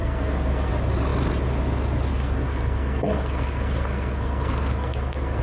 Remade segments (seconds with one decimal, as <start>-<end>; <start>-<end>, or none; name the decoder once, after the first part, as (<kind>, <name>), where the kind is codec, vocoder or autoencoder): 0.0-0.7 (codec, SNAC); 2.1-5.4